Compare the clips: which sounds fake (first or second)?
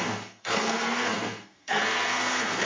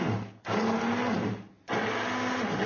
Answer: first